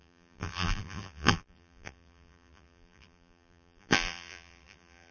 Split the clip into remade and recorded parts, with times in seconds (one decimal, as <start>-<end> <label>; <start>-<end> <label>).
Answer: 0.0-5.1 remade

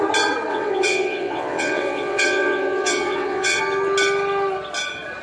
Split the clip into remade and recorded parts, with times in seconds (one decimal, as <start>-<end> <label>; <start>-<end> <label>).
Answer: 0.0-0.5 recorded; 0.5-3.6 remade; 3.6-5.2 recorded

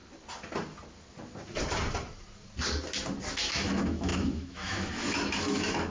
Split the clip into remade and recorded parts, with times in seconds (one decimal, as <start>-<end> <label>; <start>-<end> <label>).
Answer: 0.0-3.5 recorded; 3.5-5.9 remade